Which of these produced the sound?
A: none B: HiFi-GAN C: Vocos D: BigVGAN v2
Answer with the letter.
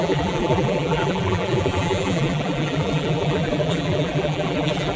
D